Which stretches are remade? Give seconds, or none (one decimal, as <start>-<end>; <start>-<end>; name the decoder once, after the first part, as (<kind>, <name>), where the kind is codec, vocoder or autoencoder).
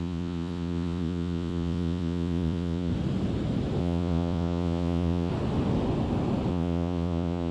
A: 0.0-2.9 (vocoder, Vocos); 3.8-5.3; 6.5-7.5